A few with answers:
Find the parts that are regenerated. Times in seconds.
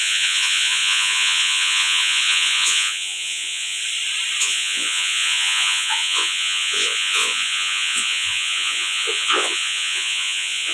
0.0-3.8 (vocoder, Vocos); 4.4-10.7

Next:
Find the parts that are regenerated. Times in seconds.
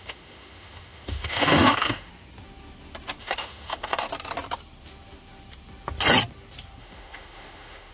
0.0-2.1 (autoencoder, DAC-VAE); 3.2-4.1; 6.8-7.9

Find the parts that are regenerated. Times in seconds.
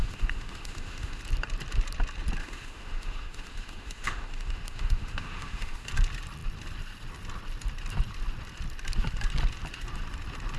0.0-1.2 (autoencoder, DAC-VAE); 2.4-5.9